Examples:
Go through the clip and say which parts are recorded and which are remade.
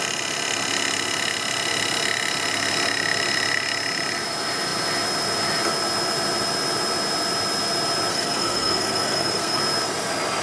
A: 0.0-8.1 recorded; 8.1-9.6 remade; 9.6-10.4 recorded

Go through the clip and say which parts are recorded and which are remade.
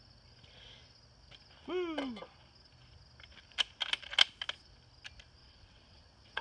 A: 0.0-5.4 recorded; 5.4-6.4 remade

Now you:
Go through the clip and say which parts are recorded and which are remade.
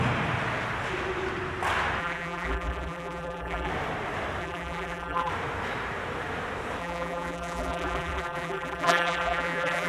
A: 0.0-2.0 recorded; 2.0-3.7 remade; 3.7-4.4 recorded; 4.4-5.3 remade; 5.3-6.8 recorded; 6.8-9.9 remade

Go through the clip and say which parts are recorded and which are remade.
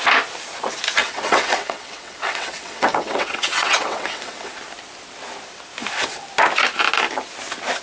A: 0.0-1.0 recorded; 1.0-4.5 remade; 4.5-7.8 recorded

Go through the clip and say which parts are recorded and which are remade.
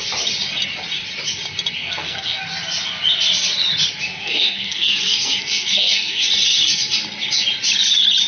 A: 0.0-1.8 recorded; 1.8-2.4 remade; 2.4-4.1 recorded; 4.1-6.2 remade; 6.2-8.3 recorded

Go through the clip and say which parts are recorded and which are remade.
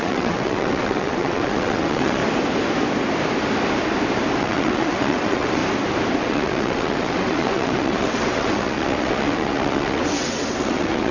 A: 0.0-2.2 remade; 2.2-4.4 recorded; 4.4-5.6 remade; 5.6-6.2 recorded; 6.2-11.1 remade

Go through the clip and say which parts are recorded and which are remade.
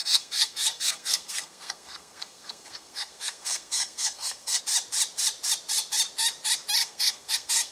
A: 0.0-4.6 remade; 4.6-6.8 recorded; 6.8-7.7 remade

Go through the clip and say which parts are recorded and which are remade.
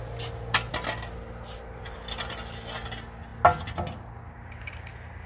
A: 0.0-5.3 recorded